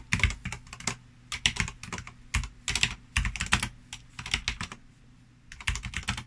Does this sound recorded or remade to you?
recorded